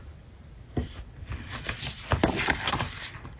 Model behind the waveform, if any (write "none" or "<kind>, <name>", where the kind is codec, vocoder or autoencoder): none